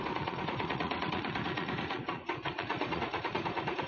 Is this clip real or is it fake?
fake